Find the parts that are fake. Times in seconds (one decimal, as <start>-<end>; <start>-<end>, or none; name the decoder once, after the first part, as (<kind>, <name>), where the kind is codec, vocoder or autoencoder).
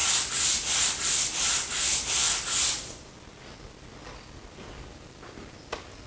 none